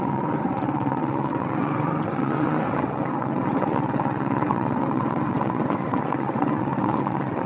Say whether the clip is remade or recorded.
remade